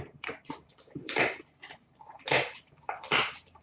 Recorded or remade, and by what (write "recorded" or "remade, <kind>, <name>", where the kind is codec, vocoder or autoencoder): remade, vocoder, BigVGAN v2